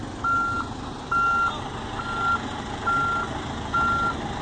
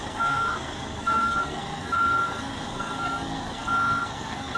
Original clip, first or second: first